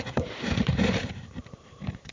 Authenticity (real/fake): fake